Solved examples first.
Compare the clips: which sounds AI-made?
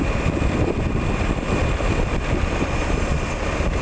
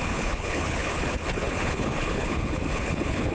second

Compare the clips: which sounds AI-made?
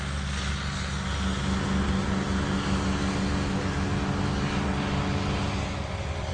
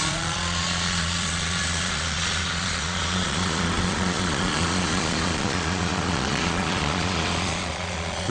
second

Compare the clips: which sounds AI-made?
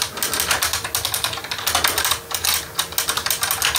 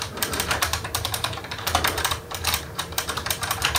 second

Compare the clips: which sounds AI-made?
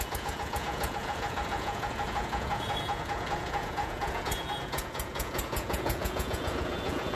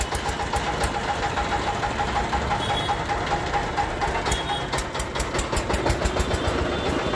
first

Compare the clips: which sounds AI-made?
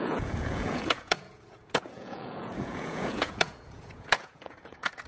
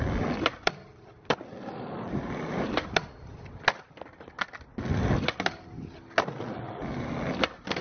first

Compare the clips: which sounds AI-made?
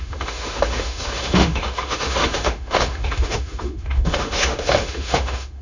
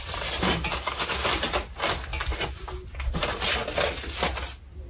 first